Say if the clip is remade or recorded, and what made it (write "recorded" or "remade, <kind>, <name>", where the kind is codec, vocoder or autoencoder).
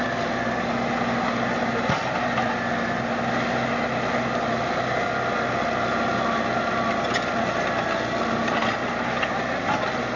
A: recorded